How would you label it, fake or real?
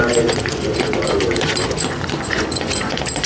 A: fake